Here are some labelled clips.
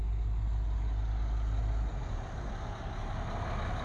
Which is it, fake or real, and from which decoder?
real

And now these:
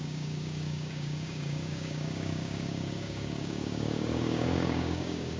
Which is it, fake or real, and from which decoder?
fake, codec, DAC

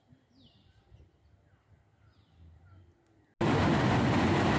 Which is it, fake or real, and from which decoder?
real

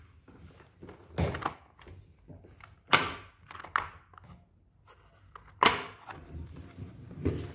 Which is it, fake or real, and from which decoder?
real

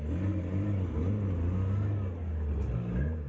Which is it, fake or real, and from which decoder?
real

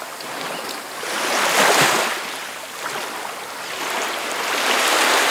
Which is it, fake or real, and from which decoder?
real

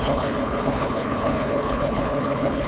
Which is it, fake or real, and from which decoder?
fake, codec, HILCodec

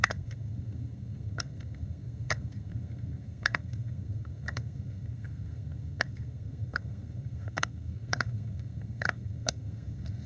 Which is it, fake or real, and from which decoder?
fake, codec, SNAC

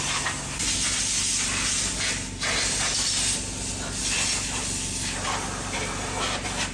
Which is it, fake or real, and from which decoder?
real